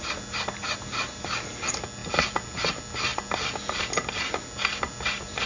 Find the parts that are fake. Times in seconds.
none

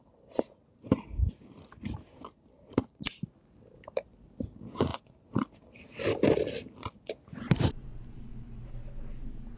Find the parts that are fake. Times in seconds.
none